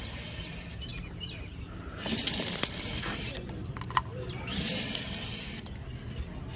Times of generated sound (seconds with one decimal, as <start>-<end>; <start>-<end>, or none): none